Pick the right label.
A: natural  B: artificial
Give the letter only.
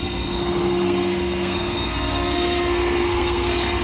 B